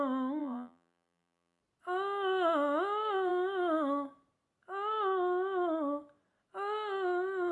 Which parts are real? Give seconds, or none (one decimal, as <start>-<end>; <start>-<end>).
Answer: 0.0-0.4; 1.6-7.5